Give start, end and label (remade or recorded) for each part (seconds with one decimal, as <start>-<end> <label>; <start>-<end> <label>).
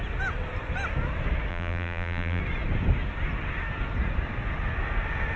0.0-1.5 recorded; 1.5-2.4 remade; 2.4-5.4 recorded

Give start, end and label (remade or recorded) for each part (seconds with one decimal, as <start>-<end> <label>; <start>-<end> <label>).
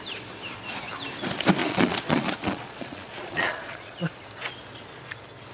0.0-1.6 recorded; 1.6-4.0 remade; 4.0-5.5 recorded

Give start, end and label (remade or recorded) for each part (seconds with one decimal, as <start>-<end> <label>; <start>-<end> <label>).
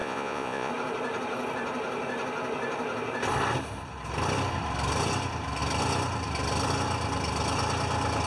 0.0-0.7 remade; 0.7-8.3 recorded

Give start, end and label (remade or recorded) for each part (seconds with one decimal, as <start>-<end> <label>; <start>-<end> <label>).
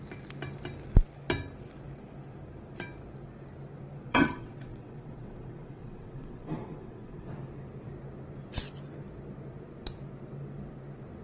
0.0-4.1 recorded; 4.1-7.3 remade; 7.3-11.2 recorded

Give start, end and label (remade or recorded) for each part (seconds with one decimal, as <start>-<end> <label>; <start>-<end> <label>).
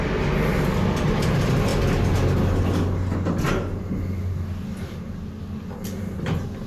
0.0-6.7 recorded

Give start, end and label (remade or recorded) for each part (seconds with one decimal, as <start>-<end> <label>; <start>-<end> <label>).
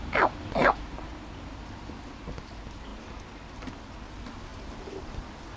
0.0-0.6 recorded; 0.6-1.1 remade; 1.1-2.9 recorded; 2.9-3.7 remade; 3.7-4.5 recorded; 4.5-5.6 remade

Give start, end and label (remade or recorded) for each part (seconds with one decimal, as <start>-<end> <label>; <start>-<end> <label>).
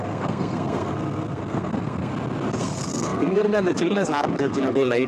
0.0-2.1 remade; 2.1-2.6 recorded; 2.6-5.1 remade